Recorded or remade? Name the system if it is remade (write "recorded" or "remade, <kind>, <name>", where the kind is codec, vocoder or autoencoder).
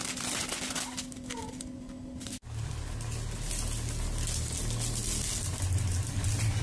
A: recorded